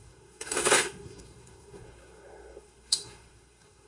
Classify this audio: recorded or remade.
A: remade